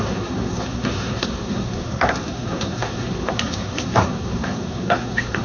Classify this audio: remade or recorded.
remade